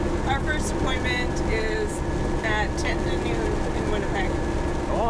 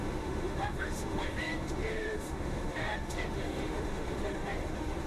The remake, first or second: second